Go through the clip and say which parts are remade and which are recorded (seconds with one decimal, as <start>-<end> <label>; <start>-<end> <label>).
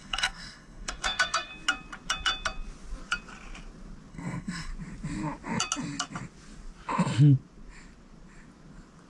0.0-1.5 remade; 1.5-4.1 recorded; 4.1-4.7 remade; 4.7-9.1 recorded